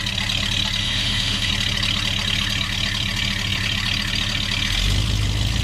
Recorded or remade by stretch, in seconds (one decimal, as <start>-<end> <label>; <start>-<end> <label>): 0.0-0.8 recorded; 0.8-1.5 remade; 1.5-5.6 recorded